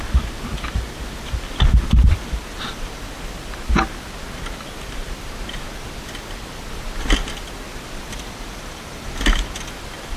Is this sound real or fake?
real